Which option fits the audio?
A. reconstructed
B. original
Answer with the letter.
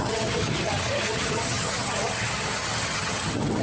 A